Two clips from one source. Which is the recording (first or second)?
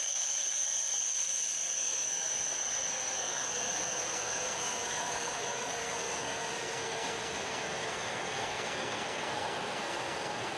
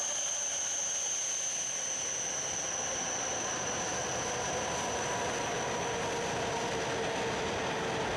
second